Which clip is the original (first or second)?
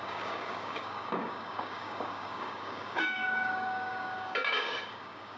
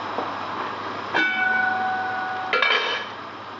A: second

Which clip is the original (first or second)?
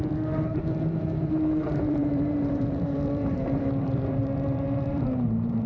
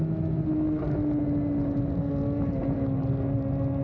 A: second